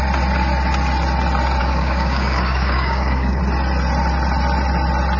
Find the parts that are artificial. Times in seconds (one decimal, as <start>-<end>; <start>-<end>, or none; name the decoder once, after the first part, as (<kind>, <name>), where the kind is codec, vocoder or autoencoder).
1.6-3.4 (codec, DAC)